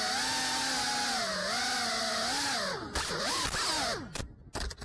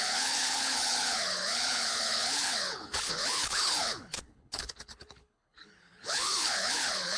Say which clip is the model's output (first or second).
second